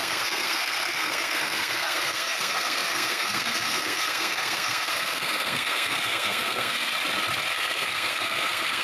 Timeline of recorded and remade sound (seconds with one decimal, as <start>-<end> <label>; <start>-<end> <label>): 0.0-6.9 remade; 6.9-7.5 recorded; 7.5-8.8 remade